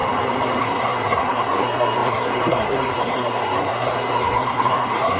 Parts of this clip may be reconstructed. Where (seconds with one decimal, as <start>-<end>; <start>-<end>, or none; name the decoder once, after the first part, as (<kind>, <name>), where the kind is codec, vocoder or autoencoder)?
0.6-5.2 (codec, SNAC)